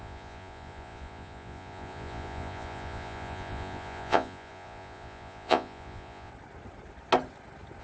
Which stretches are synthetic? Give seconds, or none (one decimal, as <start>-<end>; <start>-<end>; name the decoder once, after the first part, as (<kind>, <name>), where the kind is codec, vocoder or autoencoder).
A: 0.0-6.3 (vocoder, Vocos)